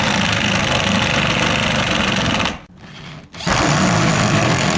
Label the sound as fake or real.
real